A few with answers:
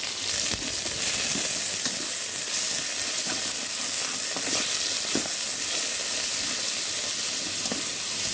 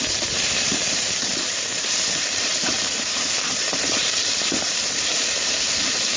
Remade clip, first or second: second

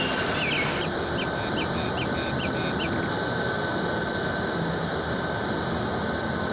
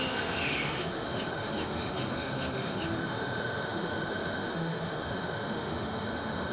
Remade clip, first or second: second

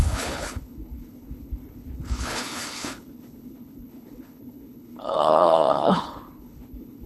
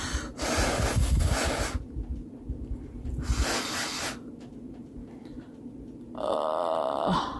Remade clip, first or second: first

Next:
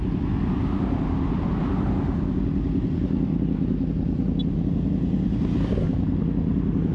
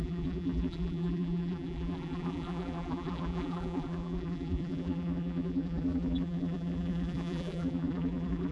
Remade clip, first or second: second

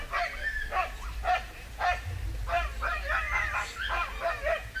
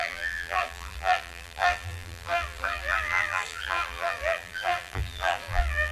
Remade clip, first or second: second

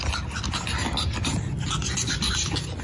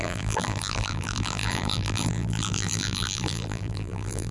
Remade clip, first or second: second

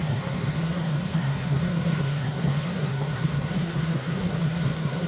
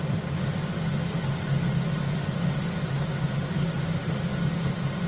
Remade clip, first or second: first